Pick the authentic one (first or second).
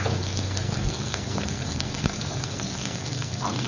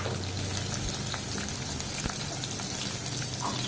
second